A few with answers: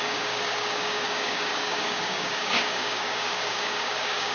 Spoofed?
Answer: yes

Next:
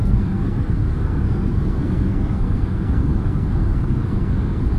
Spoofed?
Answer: yes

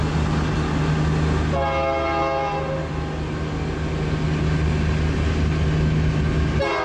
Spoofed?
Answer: no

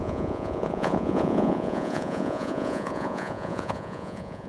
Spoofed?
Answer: yes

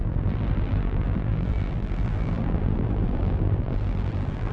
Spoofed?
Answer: yes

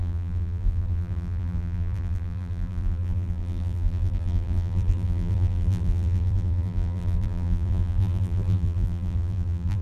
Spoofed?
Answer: yes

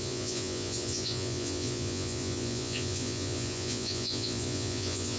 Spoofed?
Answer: yes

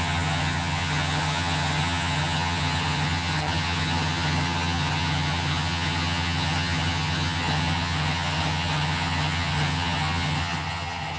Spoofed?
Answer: yes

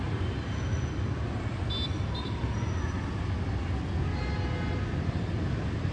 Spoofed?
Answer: no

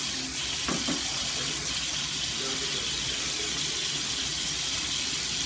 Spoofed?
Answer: no